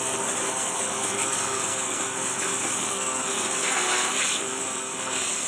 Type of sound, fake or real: fake